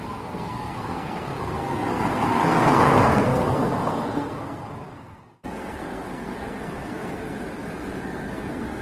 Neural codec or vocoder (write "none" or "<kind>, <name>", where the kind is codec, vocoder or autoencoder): codec, SNAC